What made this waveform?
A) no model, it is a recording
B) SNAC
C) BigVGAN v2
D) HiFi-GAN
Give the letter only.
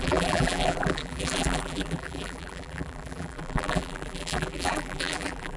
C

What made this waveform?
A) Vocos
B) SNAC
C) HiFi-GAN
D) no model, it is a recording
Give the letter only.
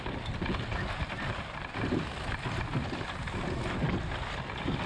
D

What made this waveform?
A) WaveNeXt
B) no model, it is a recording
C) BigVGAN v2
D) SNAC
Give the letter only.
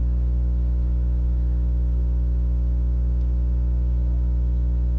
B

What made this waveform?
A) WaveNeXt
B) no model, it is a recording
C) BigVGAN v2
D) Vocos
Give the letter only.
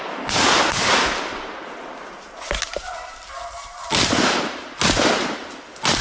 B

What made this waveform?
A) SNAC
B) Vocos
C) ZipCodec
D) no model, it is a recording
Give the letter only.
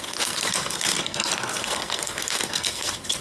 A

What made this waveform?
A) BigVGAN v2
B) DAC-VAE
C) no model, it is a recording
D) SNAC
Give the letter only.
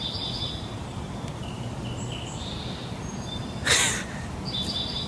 C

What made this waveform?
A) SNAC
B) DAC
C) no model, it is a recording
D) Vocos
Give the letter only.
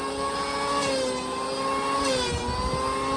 C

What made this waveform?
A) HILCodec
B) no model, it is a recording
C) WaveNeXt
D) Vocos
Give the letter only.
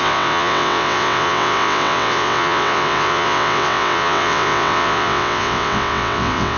C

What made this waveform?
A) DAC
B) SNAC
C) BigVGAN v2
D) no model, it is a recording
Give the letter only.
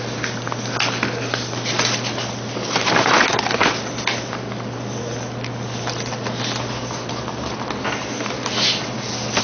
D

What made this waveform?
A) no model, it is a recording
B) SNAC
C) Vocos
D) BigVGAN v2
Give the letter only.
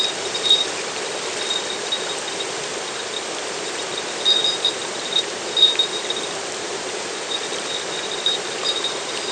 D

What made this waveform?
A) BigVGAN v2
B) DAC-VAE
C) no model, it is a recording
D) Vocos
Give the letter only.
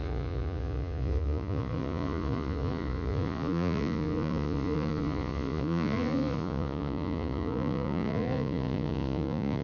D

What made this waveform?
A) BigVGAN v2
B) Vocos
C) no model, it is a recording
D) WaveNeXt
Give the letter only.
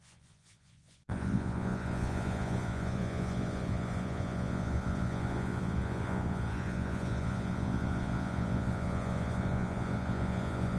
B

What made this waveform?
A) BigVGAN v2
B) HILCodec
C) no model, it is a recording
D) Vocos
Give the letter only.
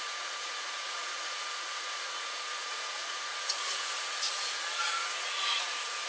D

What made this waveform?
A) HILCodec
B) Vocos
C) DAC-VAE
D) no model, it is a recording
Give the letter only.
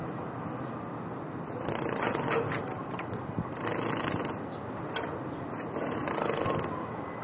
D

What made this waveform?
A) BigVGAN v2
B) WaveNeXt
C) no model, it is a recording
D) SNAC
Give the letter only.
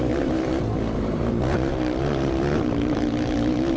A